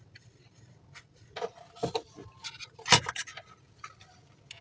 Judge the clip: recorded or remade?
recorded